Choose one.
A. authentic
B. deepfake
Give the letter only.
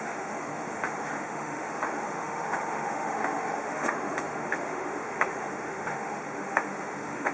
B